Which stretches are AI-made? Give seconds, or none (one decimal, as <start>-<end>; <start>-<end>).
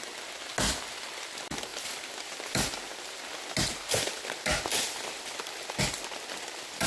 none